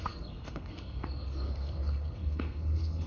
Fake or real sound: fake